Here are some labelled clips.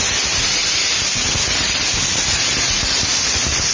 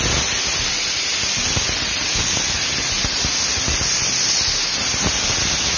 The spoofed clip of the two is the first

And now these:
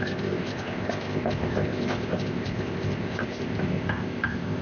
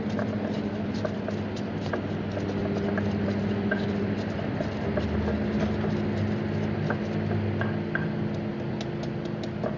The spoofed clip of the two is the first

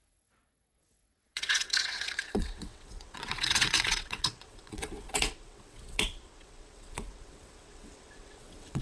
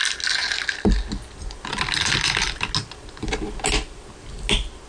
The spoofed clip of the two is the first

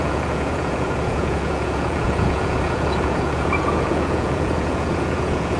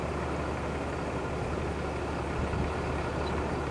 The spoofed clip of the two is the first